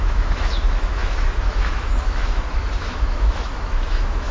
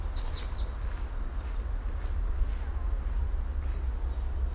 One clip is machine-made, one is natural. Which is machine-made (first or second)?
first